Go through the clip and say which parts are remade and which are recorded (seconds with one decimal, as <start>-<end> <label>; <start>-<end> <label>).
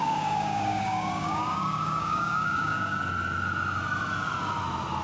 0.0-3.0 remade; 3.0-5.0 recorded